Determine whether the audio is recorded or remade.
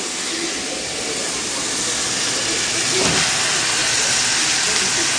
recorded